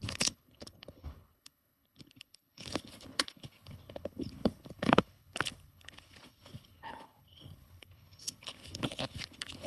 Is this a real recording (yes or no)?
no